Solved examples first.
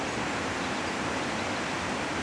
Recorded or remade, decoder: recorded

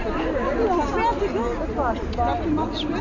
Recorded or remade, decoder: recorded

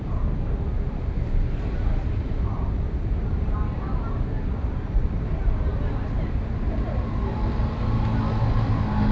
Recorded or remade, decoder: recorded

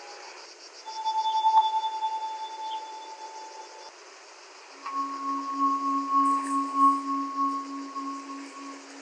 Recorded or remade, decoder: recorded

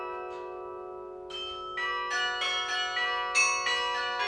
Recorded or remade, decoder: recorded